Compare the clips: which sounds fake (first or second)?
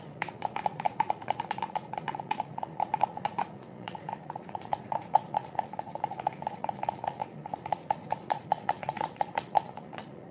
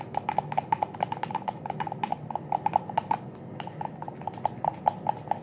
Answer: first